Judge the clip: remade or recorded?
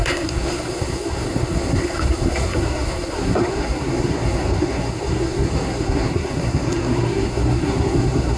remade